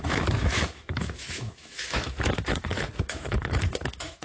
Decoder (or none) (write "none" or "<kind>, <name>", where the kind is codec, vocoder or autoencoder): autoencoder, DAC-VAE